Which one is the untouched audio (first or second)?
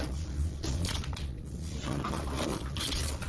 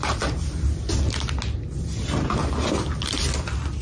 second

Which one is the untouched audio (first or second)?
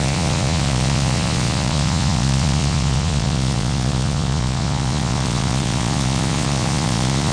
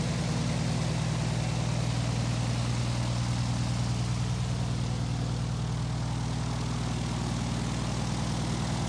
second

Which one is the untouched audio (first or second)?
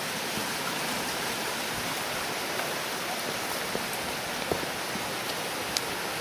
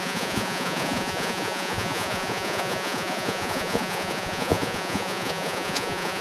first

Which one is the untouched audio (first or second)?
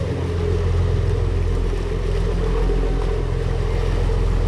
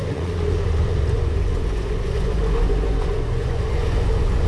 first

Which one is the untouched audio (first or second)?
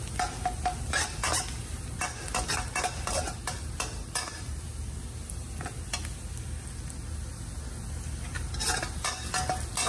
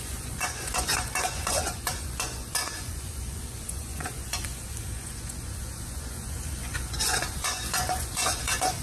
first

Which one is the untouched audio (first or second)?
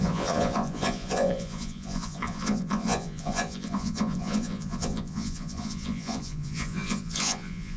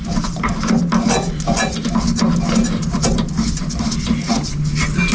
second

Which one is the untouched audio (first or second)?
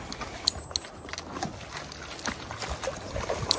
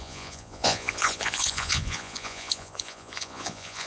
first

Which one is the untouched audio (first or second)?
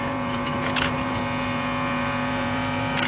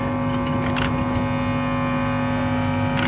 second